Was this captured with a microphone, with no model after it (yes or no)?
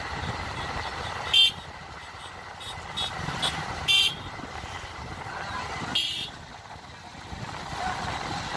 yes